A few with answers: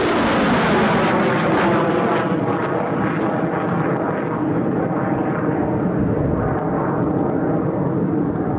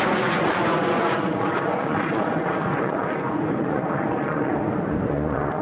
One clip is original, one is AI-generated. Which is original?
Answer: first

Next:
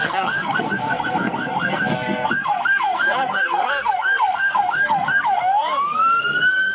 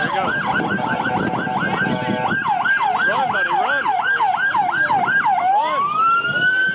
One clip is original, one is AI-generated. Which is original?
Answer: second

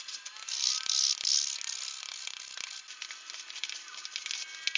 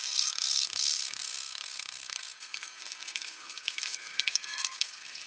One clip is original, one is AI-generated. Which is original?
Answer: first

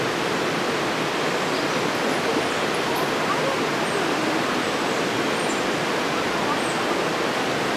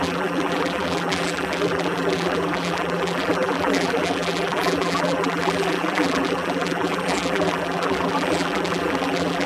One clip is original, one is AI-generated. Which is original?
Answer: first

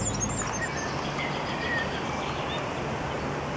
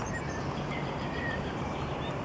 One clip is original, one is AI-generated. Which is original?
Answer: first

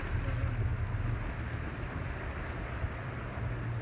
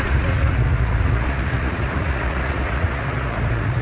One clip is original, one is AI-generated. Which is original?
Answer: first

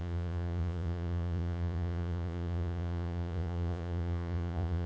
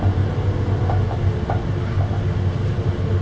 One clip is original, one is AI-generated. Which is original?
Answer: second